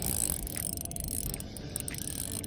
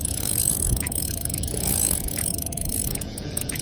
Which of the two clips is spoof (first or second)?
second